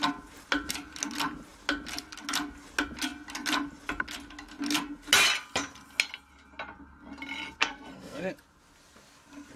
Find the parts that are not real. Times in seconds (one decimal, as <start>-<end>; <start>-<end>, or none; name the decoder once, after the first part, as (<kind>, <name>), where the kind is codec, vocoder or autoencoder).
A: 7.6-8.3 (codec, SNAC)

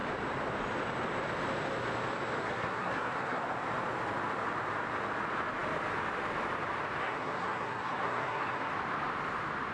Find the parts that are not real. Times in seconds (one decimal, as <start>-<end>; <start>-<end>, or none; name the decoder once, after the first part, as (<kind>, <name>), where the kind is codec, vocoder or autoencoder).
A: 2.4-3.4 (codec, SNAC); 7.0-8.7